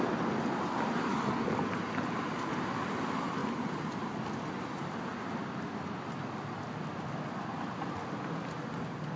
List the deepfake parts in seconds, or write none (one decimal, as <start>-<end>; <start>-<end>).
none